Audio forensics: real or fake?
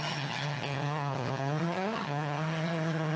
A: fake